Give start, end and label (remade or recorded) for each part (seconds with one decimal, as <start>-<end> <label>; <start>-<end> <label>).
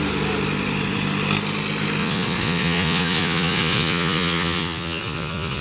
0.0-2.0 recorded; 2.0-5.6 remade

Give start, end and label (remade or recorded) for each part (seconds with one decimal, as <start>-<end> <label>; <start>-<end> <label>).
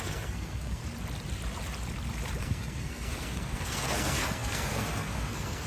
0.0-0.8 remade; 0.8-2.4 recorded; 2.4-5.7 remade